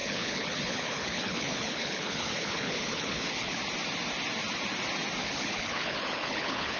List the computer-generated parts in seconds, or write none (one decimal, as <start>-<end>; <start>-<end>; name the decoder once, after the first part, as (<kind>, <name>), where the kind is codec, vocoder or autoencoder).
0.0-3.6 (codec, HILCodec); 5.2-6.8